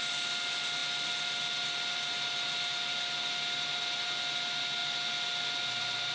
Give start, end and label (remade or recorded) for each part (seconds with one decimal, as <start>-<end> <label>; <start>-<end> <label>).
0.0-6.1 recorded

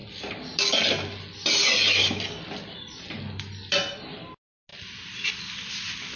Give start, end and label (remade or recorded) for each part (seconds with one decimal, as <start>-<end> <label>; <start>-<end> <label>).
0.0-6.2 recorded

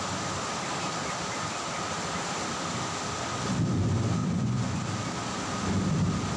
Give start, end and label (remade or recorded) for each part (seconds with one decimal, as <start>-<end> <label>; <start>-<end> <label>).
0.0-4.2 recorded; 4.2-4.8 remade; 4.8-6.4 recorded

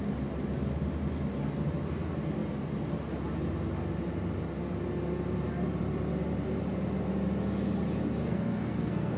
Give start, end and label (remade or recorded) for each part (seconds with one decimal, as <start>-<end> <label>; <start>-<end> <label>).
0.0-8.2 recorded; 8.2-9.2 remade

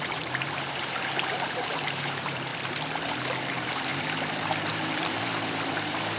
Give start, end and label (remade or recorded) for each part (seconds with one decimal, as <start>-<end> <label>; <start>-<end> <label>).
0.0-2.5 remade; 2.5-3.4 recorded; 3.4-3.9 remade; 3.9-4.7 recorded; 4.7-6.2 remade

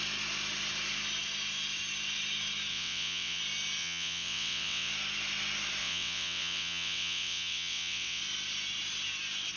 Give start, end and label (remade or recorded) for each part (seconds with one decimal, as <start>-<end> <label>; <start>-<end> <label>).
0.0-2.7 recorded; 2.7-3.4 remade; 3.4-3.8 recorded; 3.8-4.9 remade; 4.9-5.8 recorded; 5.8-8.2 remade; 8.2-9.6 recorded

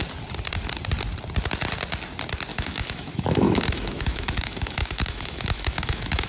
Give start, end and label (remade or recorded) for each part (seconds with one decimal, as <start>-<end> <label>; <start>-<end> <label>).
0.0-2.5 recorded; 2.5-6.3 remade

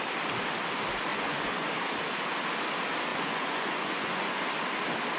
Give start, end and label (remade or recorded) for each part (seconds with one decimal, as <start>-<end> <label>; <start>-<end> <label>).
0.0-1.1 recorded; 1.1-1.7 remade; 1.7-3.1 recorded; 3.1-4.3 remade; 4.3-5.2 recorded